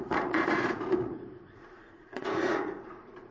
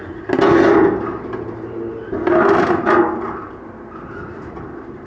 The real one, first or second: second